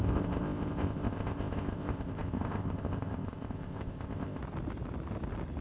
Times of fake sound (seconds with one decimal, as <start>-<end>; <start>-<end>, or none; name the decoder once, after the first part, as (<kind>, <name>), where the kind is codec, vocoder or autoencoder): 0.0-4.4 (codec, ZipCodec)